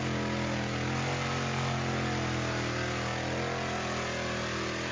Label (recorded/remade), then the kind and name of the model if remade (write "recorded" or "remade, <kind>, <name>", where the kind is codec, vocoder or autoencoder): recorded